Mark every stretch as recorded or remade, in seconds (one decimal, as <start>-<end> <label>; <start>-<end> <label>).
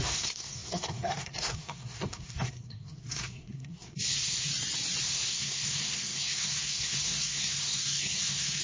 0.0-4.5 remade; 4.5-5.0 recorded; 5.0-8.6 remade